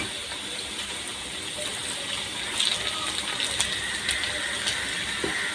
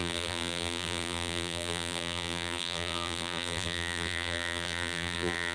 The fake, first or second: second